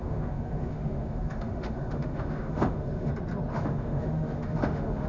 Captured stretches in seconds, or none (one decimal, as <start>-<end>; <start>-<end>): 3.1-3.5